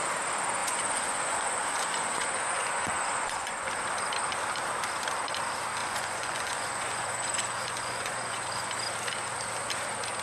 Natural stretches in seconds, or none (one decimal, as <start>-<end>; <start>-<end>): 0.0-0.6; 3.7-5.8; 8.7-10.2